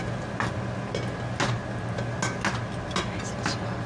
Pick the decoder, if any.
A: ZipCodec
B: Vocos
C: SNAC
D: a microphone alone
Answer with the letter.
D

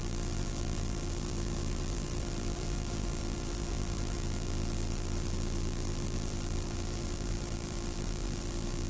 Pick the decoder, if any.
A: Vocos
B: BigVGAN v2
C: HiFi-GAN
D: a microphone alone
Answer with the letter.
B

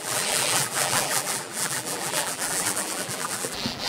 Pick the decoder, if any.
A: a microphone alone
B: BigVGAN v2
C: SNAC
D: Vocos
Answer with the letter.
B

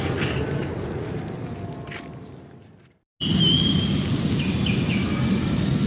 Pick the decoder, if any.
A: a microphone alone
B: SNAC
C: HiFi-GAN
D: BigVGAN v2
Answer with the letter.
A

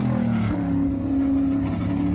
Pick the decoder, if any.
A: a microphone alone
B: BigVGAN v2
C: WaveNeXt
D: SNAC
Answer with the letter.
A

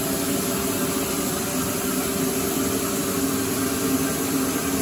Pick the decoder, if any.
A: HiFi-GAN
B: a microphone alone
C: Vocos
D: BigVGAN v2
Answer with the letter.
B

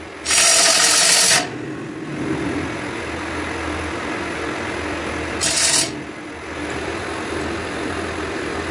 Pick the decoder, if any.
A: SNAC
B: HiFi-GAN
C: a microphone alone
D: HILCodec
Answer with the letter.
C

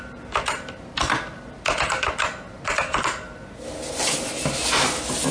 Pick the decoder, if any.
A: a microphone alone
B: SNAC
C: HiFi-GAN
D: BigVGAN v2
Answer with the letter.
A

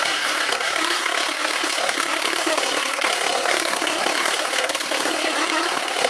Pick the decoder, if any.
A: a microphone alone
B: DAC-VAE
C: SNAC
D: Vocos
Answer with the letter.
C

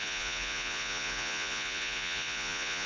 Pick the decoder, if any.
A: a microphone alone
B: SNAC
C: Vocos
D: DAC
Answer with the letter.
C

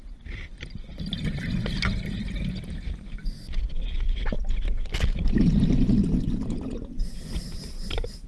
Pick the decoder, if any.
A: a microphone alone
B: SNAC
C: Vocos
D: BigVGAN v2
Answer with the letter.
A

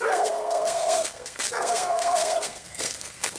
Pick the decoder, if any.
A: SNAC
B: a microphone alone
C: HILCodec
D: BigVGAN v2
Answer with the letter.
A